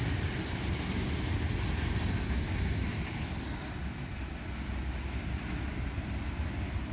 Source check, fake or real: real